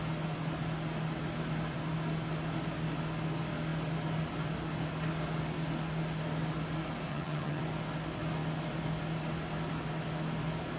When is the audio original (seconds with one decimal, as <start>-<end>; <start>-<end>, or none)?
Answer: 0.0-7.1; 7.6-10.8